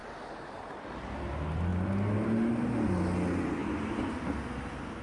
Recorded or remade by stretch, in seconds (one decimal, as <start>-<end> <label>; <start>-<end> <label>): 0.0-5.0 recorded